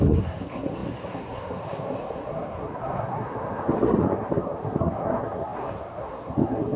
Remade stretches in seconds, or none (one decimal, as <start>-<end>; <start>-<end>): 0.0-6.8